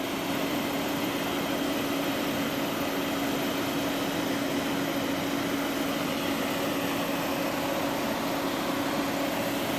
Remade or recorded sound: recorded